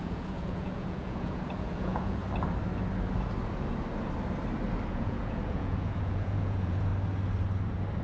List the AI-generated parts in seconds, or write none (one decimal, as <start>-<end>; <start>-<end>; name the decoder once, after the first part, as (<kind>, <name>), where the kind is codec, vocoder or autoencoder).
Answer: 0.0-2.2 (vocoder, Vocos); 4.9-6.9